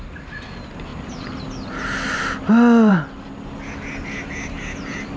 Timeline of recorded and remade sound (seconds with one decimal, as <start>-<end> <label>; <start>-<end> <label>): 0.0-5.2 recorded